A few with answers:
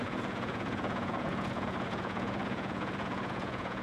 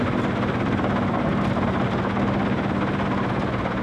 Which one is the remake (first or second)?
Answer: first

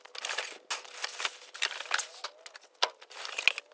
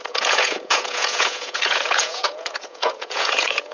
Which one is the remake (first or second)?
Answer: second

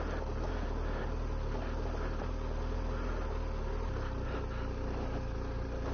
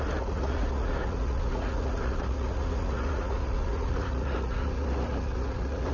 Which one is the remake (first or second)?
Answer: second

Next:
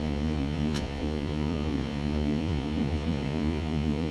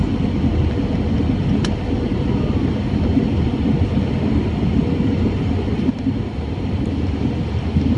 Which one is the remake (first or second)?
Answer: first